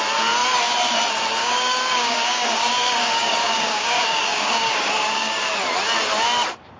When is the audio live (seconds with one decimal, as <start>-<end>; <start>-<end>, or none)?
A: 0.0-1.4; 5.5-6.8